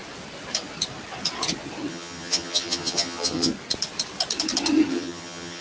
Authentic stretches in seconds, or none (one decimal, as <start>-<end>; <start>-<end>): 0.0-1.9; 3.5-4.9